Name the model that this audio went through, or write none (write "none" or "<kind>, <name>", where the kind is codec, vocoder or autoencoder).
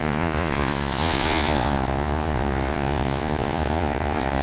vocoder, Vocos